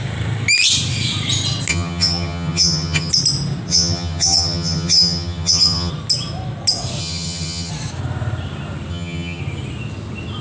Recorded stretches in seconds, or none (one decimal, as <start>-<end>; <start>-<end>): 0.0-1.7; 3.1-3.7; 5.9-7.0; 7.7-8.9; 9.4-10.4